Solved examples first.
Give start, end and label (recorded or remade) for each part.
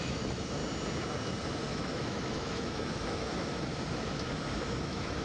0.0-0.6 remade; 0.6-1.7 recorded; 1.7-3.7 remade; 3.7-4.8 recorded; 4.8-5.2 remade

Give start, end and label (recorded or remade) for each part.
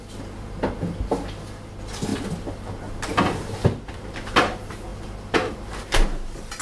0.0-6.6 recorded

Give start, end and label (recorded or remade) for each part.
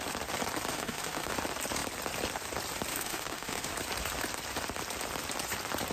0.0-0.7 recorded; 0.7-1.3 remade; 1.3-2.9 recorded; 2.9-3.7 remade; 3.7-5.9 recorded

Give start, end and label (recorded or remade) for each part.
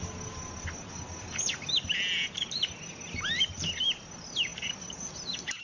0.0-5.6 recorded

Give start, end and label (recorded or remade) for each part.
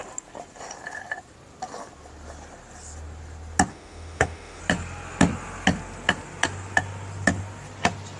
0.0-3.7 recorded; 3.7-4.6 remade; 4.6-8.2 recorded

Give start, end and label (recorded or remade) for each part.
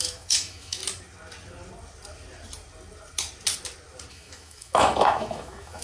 0.0-0.8 remade; 0.8-4.1 recorded; 4.1-5.8 remade